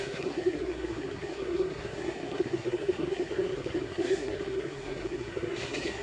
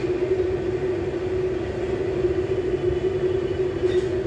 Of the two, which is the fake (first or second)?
first